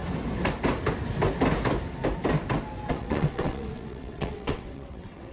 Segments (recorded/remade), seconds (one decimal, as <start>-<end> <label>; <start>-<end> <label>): 0.0-2.9 recorded; 2.9-5.3 remade